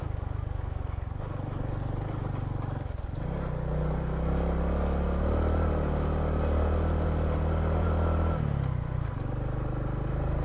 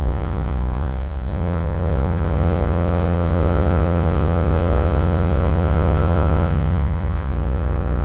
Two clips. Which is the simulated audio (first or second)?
second